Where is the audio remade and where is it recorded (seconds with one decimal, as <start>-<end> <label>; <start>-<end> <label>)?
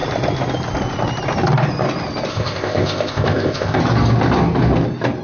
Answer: 0.0-2.3 recorded; 2.3-3.8 remade; 3.8-5.2 recorded